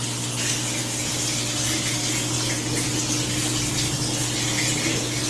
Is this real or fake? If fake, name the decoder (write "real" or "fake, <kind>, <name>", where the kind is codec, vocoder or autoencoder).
real